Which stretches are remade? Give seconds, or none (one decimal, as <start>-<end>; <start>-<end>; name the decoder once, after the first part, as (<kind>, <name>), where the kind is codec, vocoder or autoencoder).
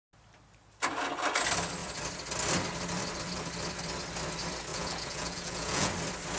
4.7-5.9 (vocoder, Vocos)